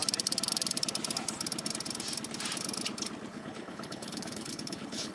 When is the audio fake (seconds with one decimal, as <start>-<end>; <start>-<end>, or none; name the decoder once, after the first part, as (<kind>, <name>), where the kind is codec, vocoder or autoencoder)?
3.3-5.1 (codec, HILCodec)